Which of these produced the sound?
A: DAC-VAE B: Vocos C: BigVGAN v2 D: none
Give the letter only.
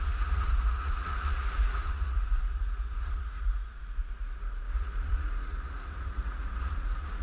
B